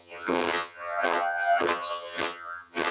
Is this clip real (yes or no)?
no